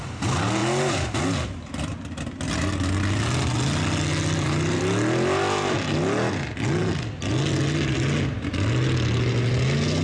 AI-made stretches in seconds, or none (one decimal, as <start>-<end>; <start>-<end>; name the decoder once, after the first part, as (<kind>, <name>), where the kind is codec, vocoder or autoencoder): none